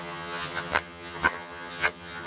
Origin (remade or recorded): remade